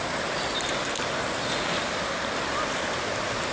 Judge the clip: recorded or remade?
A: recorded